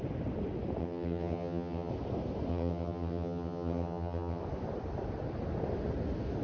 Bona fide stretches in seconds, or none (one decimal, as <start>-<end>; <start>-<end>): 0.0-0.8; 1.9-2.5; 4.4-6.4